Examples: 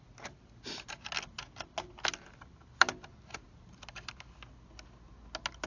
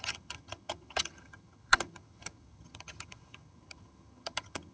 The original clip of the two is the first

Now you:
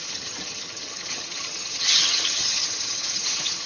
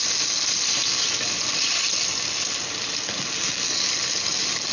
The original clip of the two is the second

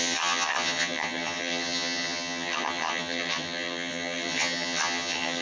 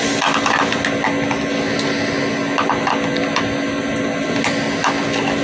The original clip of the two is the second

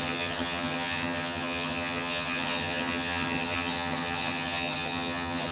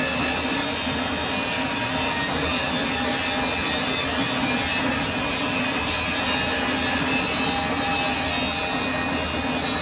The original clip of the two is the second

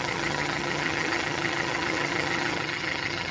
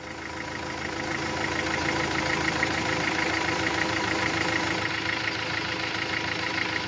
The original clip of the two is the second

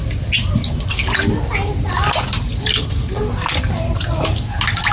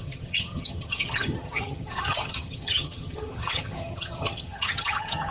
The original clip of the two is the first